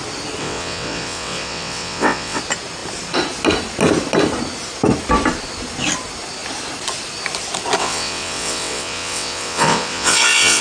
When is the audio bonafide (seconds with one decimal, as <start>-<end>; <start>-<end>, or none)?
0.0-0.4; 2.4-7.8